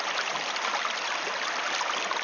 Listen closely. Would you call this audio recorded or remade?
recorded